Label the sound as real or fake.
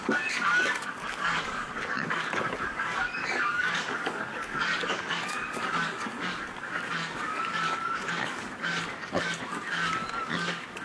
fake